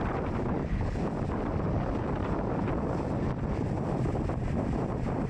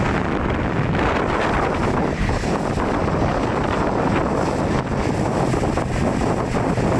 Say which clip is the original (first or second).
second